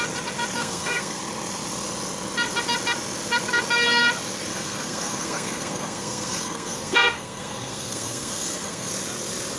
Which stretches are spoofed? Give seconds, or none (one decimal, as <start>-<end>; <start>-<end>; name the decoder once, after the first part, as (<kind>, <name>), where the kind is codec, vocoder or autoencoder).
0.6-1.2 (codec, SNAC); 4.5-8.9